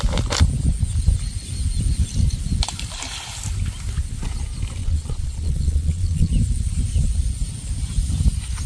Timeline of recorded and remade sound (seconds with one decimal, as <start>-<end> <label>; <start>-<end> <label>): 0.0-4.8 recorded; 4.8-6.3 remade; 6.3-8.7 recorded